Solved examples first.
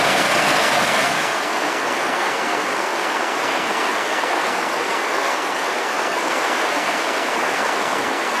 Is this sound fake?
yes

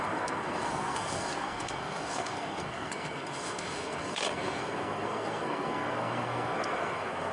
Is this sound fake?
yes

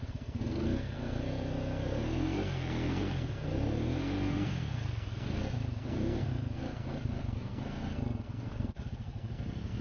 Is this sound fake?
yes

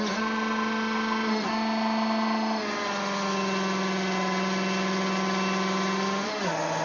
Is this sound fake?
no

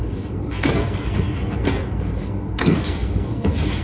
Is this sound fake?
yes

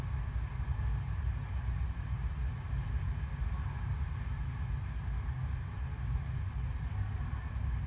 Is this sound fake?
no